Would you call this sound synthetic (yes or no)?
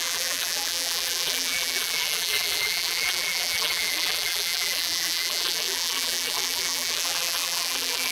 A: yes